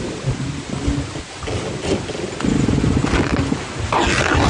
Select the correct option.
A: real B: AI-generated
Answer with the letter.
A